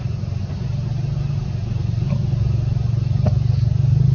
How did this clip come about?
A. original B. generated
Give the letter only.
A